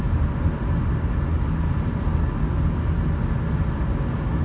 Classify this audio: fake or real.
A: real